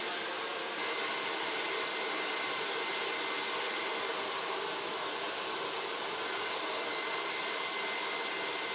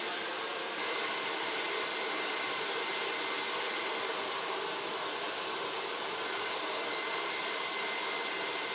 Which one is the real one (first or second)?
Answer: first